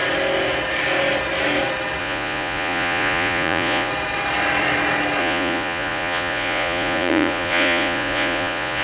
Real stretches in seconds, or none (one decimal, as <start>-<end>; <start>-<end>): 0.0-2.0; 3.9-5.2